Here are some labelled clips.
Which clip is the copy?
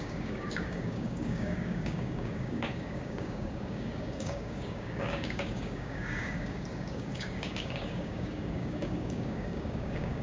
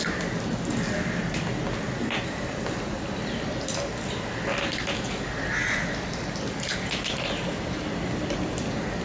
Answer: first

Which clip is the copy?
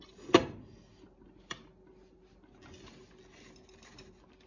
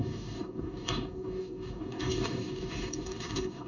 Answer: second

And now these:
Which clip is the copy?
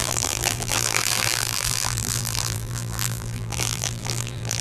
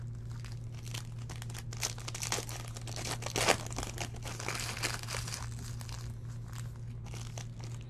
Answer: first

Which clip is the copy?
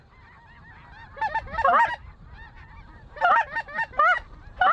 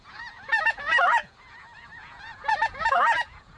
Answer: second